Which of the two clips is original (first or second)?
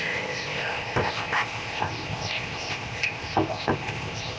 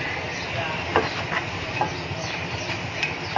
second